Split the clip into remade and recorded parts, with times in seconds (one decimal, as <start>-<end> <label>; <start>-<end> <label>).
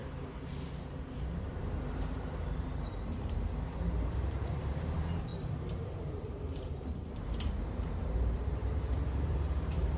0.0-10.0 remade